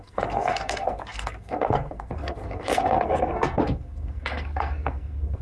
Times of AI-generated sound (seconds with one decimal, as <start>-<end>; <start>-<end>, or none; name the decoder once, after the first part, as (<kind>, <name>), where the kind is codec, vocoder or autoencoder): 0.0-5.4 (codec, SNAC)